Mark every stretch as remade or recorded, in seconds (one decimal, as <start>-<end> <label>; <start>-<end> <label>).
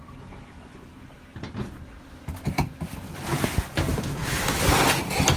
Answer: 0.0-3.9 recorded; 3.9-4.4 remade; 4.4-5.4 recorded